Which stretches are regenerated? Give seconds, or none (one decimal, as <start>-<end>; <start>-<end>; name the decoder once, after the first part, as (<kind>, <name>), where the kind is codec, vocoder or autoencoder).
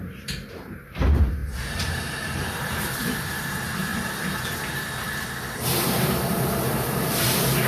0.0-3.9 (vocoder, BigVGAN v2); 5.6-7.7